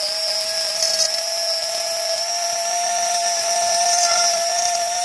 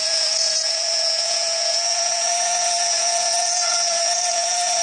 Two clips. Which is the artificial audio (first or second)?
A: second